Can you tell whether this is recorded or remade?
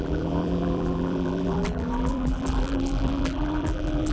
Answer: remade